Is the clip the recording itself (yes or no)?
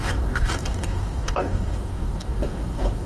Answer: no